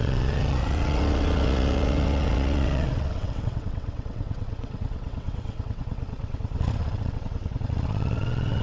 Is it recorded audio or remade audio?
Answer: remade